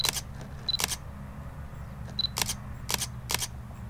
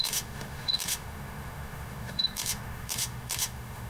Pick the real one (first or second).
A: first